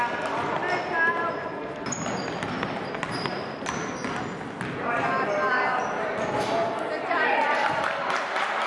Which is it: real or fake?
real